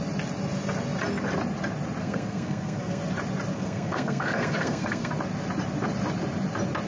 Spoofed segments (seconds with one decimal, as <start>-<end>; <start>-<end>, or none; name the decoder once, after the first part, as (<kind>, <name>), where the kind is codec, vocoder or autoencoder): 2.0-3.0 (codec, SNAC); 3.5-5.1